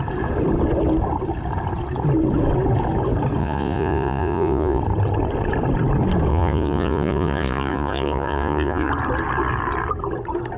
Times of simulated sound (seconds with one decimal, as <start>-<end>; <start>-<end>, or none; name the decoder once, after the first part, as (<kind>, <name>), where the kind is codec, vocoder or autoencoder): 3.4-4.8 (vocoder, Vocos); 6.3-8.9